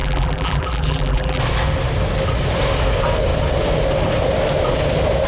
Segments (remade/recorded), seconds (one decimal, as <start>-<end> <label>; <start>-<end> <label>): 0.0-1.4 remade; 1.4-5.3 recorded